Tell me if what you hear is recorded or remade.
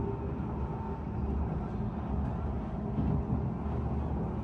recorded